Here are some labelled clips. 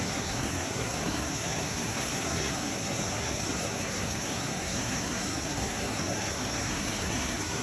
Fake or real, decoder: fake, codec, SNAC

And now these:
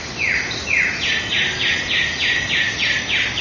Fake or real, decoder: real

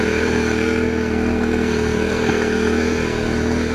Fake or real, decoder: fake, codec, SNAC